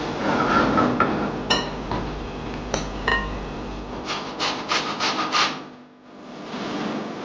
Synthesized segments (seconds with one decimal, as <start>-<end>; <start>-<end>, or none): none